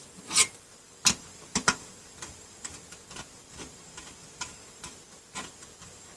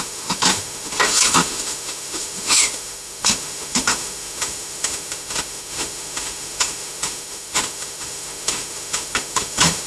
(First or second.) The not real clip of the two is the second